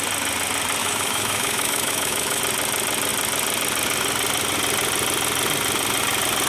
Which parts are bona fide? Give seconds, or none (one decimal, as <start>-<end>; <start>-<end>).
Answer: 0.0-0.8; 2.4-6.5